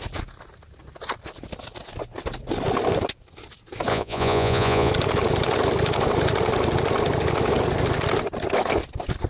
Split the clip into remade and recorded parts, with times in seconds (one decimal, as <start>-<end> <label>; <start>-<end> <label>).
0.0-3.9 recorded; 3.9-4.9 remade; 4.9-9.3 recorded